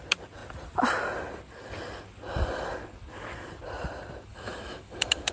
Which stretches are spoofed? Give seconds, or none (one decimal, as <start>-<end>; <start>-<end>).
4.3-5.3